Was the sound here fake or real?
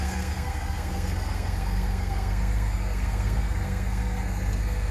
fake